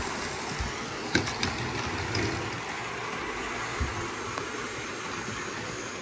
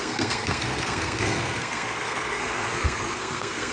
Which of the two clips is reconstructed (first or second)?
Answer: second